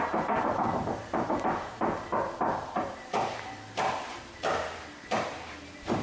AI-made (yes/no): yes